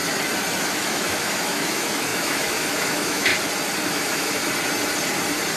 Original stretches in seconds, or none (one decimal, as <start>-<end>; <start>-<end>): 0.0-0.6; 3.3-3.9; 4.4-5.6